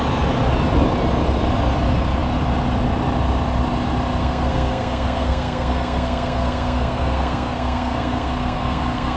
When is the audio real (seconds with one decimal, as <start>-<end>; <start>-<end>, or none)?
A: 0.0-4.2